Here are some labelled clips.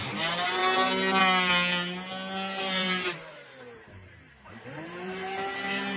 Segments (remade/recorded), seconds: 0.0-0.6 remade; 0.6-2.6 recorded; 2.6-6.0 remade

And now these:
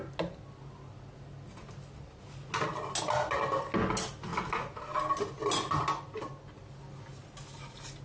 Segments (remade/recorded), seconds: 0.0-8.0 recorded

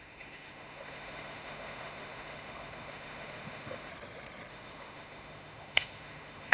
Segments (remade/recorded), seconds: 0.0-3.9 remade; 3.9-4.5 recorded; 4.5-6.5 remade

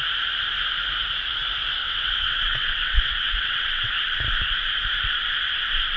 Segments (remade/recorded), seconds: 0.0-1.8 recorded; 1.8-3.9 remade; 3.9-6.0 recorded

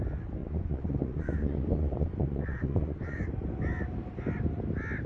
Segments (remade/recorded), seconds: 0.0-0.4 recorded; 0.4-3.3 remade; 3.3-5.1 recorded

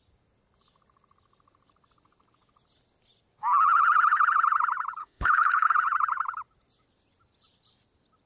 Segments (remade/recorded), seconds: 0.0-5.0 recorded; 5.0-5.7 remade; 5.7-8.3 recorded

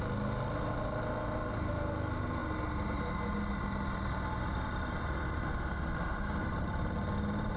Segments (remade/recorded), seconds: 0.0-7.6 recorded